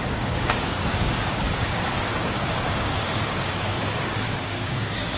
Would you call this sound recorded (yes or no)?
no